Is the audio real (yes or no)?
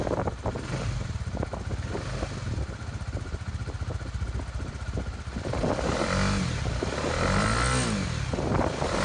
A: yes